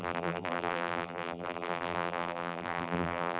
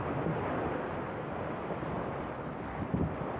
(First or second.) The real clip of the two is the second